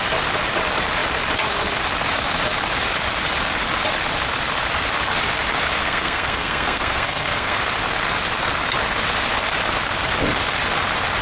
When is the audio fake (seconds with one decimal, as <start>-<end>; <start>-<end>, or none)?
5.8-7.6